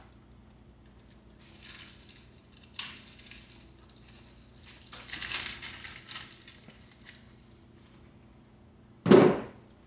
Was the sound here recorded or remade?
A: recorded